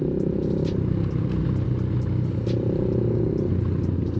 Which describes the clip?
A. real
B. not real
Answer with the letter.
A